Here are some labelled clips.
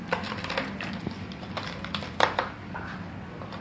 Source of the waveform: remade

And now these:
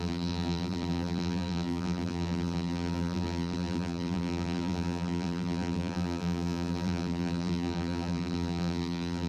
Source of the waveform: remade